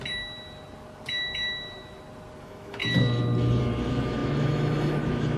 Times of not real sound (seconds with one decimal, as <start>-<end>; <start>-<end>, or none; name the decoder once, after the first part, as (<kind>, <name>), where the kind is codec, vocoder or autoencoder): 2.4-2.8 (autoencoder, DAC-VAE); 3.6-5.4